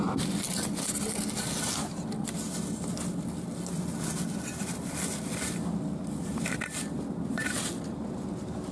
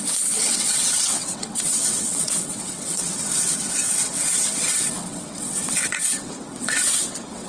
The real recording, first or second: first